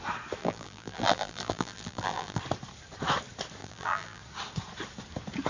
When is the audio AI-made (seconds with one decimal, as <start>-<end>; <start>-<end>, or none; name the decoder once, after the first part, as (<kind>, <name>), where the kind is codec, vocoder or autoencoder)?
0.4-2.4 (vocoder, BigVGAN v2); 3.6-4.2